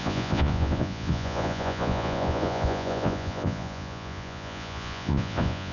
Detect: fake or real fake